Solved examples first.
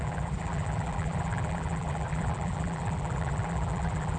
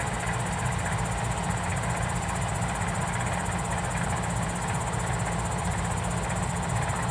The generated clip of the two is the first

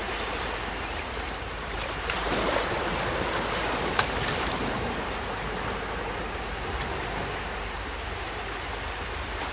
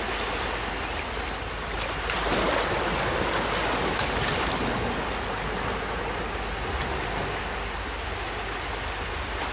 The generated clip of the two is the first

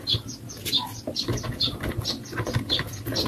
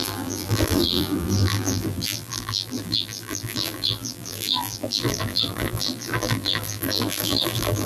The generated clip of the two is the second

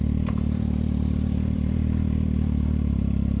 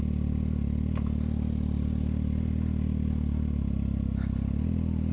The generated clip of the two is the first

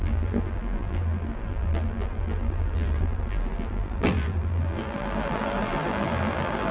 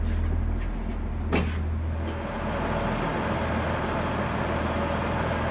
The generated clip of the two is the first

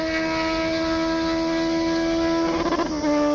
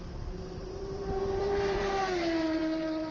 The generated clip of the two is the second